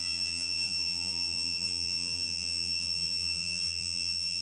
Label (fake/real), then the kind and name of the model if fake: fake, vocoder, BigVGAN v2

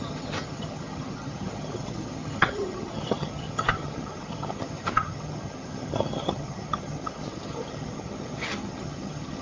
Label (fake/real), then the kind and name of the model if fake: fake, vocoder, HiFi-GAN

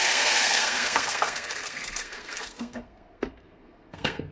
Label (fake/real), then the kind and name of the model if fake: fake, codec, SNAC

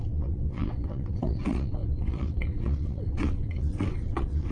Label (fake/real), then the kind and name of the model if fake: fake, vocoder, WaveNeXt